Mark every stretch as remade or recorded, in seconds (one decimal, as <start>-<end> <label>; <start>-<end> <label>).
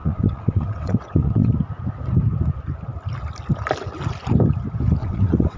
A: 0.0-1.5 remade; 1.5-5.0 recorded; 5.0-5.6 remade